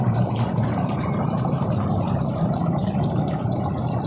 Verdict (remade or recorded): remade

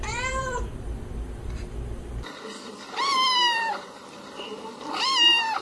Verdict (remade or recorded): remade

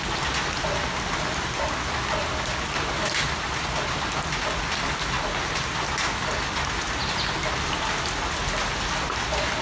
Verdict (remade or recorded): recorded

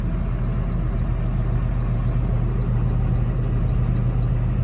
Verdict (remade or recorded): recorded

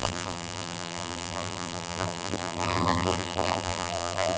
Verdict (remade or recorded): remade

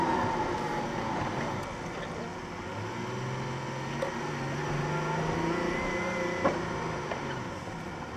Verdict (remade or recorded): recorded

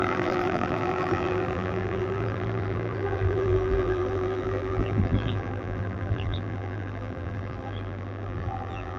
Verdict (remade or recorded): remade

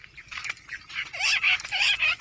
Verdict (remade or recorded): recorded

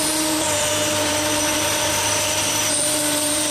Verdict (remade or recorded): remade